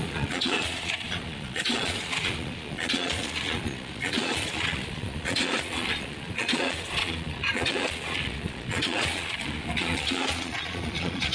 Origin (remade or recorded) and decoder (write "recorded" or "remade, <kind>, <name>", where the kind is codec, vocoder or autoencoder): remade, vocoder, Vocos